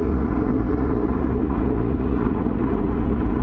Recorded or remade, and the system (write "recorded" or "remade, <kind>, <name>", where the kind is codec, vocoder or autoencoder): remade, vocoder, Vocos